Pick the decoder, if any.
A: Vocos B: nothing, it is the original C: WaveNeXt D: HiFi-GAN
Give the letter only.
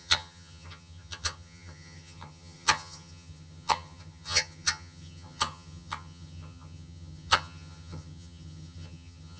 D